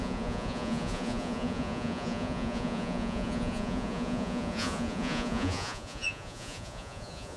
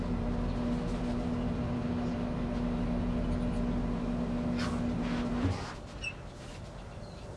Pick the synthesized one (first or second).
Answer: first